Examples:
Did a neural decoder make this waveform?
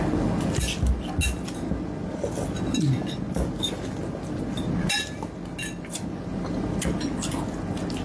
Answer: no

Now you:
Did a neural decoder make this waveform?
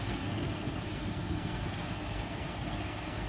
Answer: yes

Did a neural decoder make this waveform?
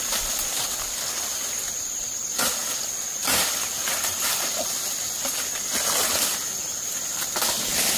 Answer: no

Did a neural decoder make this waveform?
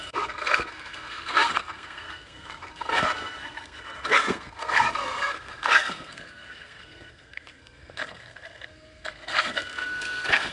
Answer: yes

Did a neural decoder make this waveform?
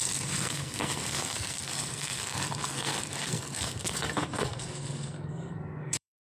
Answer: yes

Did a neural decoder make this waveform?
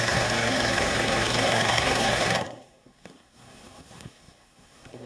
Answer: yes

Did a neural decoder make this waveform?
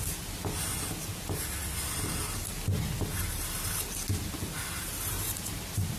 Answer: no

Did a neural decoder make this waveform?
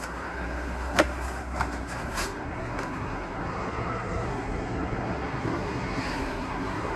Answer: yes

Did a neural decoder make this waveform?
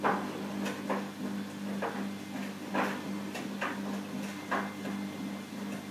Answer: no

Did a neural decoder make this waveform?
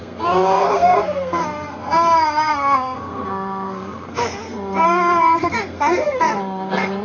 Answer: yes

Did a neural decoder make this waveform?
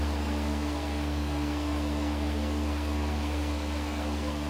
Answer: yes